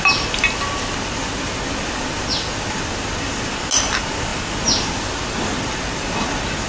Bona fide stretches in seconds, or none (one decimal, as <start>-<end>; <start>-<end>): 0.0-6.7